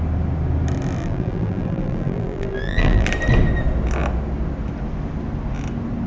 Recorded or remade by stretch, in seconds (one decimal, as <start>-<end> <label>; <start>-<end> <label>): 0.0-1.0 recorded; 1.0-3.1 remade; 3.1-6.1 recorded